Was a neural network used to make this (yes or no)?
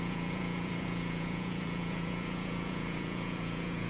yes